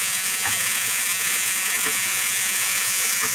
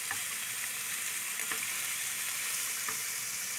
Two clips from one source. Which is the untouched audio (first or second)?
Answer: second